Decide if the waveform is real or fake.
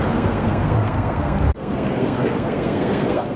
fake